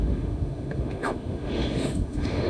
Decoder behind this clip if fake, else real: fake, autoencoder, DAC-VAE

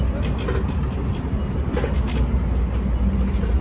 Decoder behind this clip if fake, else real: real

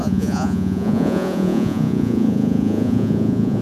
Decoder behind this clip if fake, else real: fake, vocoder, Vocos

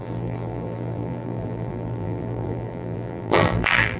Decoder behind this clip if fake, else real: fake, vocoder, BigVGAN v2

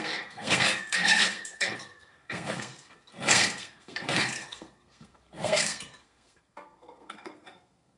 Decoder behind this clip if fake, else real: fake, codec, SNAC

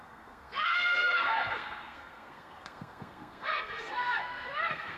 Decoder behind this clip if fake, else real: fake, codec, SNAC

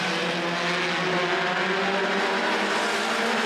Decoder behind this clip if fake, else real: real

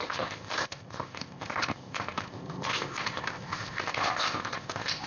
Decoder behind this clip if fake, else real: fake, codec, ZipCodec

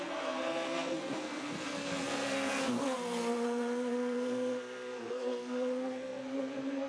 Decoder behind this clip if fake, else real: fake, codec, SNAC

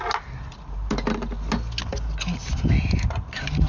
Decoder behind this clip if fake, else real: real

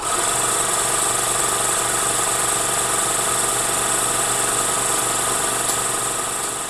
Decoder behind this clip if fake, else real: real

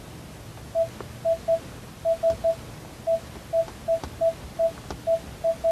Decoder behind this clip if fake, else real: real